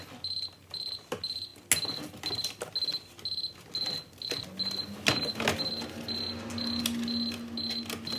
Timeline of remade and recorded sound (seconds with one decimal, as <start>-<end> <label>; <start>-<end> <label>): 0.0-8.2 recorded